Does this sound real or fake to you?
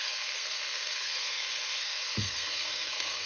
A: fake